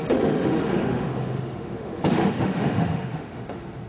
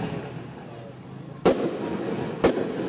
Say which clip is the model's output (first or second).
first